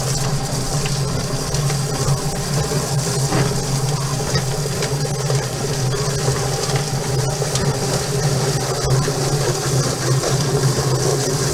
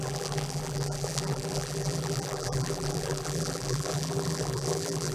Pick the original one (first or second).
first